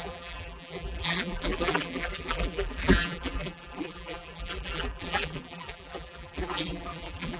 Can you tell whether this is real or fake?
fake